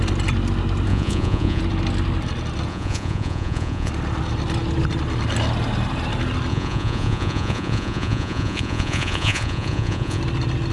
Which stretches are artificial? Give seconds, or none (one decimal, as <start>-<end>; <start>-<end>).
0.9-1.6; 2.7-3.9; 6.5-10.2